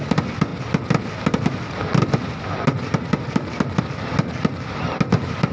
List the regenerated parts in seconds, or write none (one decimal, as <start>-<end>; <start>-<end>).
none